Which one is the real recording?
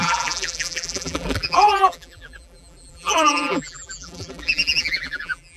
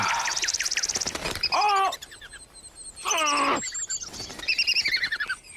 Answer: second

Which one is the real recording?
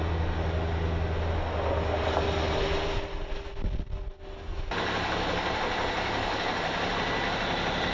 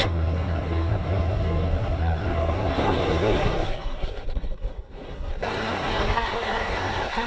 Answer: first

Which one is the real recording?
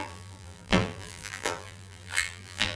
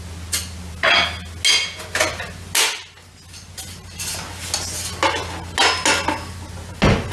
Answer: second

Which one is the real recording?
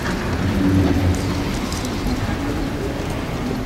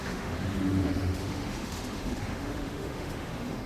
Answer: first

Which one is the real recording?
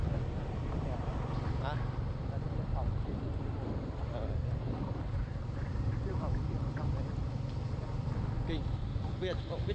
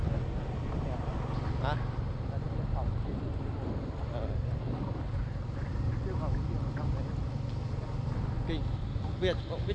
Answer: second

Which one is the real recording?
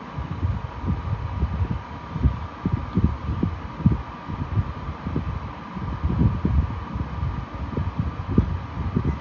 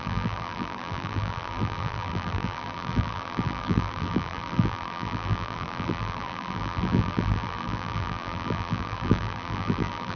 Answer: first